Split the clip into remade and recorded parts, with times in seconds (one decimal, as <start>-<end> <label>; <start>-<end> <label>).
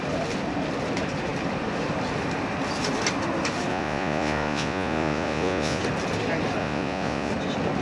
0.0-3.7 recorded; 3.7-5.8 remade; 5.8-6.6 recorded; 6.6-7.3 remade; 7.3-7.8 recorded